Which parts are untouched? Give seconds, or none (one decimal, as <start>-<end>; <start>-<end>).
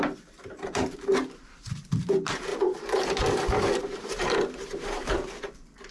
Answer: none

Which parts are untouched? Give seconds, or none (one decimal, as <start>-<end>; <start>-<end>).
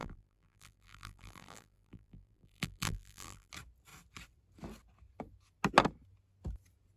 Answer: 3.5-7.0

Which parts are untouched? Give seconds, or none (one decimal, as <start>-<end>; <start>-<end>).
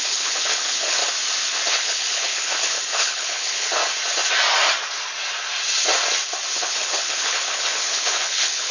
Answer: 1.0-1.7; 3.8-6.5